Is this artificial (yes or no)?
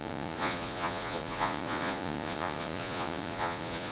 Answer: yes